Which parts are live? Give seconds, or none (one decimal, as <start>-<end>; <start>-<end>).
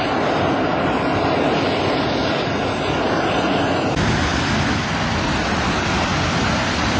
0.0-7.0